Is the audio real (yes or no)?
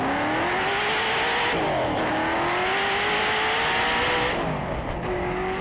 yes